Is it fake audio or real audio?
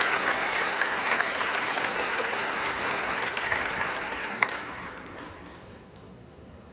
fake